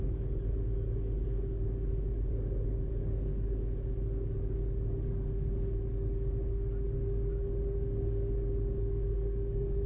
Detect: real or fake fake